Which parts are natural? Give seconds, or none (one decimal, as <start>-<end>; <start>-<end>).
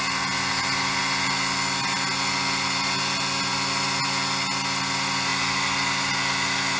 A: 0.0-6.8